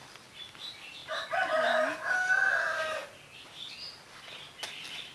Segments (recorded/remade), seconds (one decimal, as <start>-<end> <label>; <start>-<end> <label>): 0.0-5.1 recorded